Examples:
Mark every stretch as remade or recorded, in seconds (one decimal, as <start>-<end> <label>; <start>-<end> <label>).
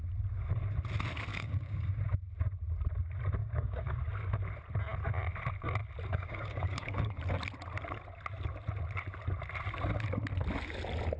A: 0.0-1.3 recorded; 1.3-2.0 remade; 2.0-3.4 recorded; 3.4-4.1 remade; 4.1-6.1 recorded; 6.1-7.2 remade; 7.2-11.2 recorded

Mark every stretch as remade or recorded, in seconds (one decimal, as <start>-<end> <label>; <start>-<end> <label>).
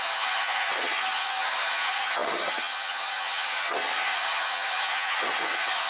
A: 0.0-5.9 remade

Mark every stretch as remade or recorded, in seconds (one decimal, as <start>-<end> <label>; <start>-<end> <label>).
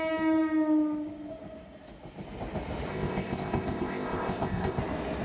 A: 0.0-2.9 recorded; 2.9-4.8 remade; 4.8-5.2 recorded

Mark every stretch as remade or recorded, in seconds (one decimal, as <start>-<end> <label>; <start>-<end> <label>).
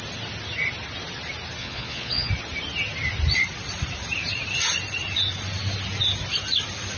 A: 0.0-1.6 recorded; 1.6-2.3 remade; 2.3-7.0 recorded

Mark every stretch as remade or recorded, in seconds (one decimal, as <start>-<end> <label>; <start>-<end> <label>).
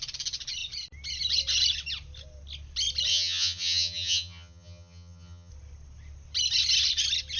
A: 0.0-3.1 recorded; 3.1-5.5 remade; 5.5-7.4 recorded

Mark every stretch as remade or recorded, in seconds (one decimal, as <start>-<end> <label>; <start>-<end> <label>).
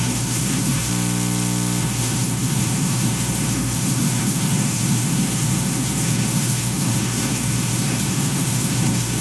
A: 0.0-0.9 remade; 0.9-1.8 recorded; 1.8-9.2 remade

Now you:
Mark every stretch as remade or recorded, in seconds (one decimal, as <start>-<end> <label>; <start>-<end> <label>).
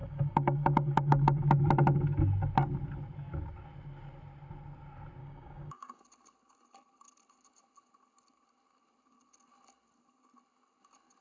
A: 0.0-1.7 remade; 1.7-5.2 recorded; 5.2-6.0 remade; 6.0-11.2 recorded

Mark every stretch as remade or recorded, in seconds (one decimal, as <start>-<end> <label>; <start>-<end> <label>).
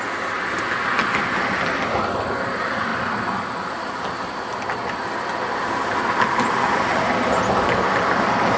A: 0.0-8.6 recorded